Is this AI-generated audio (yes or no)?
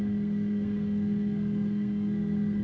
yes